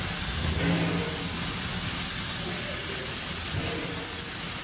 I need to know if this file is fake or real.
real